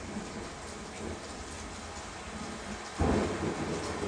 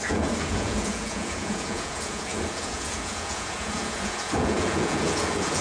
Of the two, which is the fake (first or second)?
second